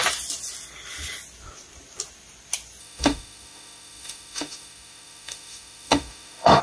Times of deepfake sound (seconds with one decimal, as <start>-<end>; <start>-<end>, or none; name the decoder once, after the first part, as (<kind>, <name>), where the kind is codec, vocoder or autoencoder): 2.8-6.6 (autoencoder, DAC-VAE)